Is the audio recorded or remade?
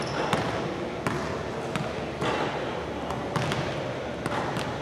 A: recorded